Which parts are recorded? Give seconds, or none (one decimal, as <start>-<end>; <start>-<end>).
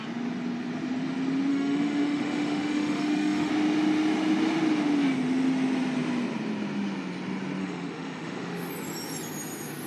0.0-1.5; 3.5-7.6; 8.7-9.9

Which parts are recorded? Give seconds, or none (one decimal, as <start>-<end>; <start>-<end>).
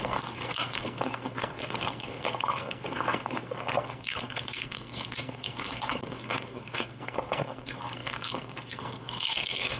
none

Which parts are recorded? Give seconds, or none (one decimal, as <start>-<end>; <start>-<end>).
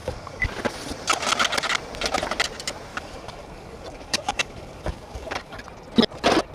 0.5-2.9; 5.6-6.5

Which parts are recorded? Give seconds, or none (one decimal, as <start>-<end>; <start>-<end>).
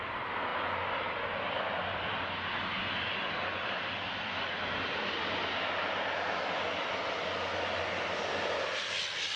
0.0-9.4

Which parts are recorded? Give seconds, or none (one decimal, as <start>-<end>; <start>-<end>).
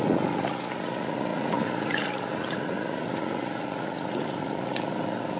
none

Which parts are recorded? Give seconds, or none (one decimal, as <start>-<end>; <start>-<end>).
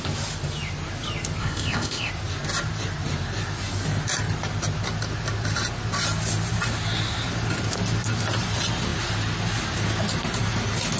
0.0-1.4; 2.1-11.0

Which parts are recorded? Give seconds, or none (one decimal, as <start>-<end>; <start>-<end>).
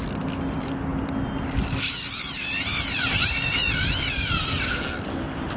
0.0-5.6